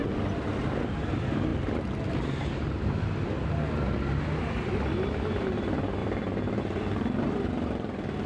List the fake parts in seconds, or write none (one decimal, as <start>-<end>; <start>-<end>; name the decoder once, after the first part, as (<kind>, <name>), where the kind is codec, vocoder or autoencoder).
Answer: 6.0-6.6 (vocoder, BigVGAN v2)